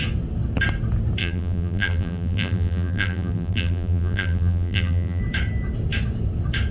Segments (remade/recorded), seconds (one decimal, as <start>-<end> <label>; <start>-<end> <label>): 0.0-1.2 recorded; 1.2-5.2 remade; 5.2-6.7 recorded